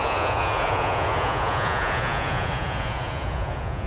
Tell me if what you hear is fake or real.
fake